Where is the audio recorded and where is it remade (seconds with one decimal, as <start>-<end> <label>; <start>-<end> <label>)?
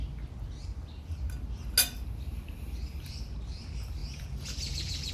0.0-4.0 recorded; 4.0-5.1 remade